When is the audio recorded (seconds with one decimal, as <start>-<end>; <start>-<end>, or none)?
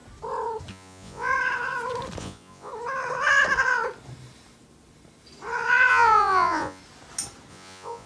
0.0-0.7; 1.3-2.2; 2.7-5.9; 6.8-7.5